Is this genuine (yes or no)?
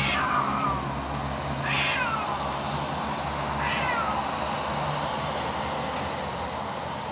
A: yes